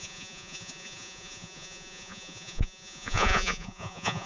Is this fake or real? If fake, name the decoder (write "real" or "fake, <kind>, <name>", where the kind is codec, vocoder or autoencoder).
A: fake, vocoder, Vocos